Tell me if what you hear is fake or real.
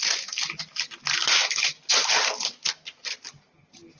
real